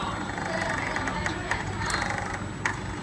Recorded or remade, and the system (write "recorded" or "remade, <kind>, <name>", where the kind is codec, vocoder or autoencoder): recorded